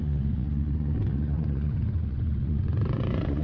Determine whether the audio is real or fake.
fake